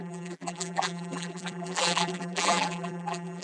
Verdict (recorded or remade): remade